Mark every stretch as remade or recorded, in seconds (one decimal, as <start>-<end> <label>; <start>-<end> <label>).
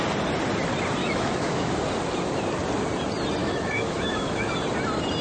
0.0-1.0 recorded; 1.0-1.7 remade; 1.7-3.4 recorded; 3.4-4.5 remade; 4.5-5.2 recorded